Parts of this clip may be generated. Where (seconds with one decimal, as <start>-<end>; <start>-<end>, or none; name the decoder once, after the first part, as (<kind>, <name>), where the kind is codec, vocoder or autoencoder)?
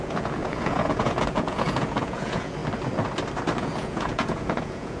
0.0-2.6 (vocoder, Vocos); 3.6-5.0